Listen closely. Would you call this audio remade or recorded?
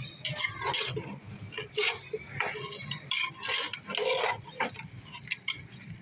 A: recorded